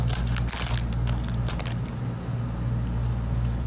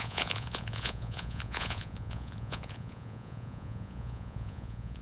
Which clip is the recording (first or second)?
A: first